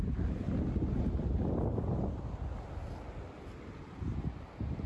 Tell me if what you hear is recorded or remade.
recorded